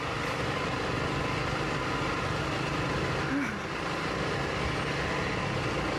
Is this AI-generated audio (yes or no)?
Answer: no